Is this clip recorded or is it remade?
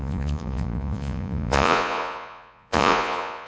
remade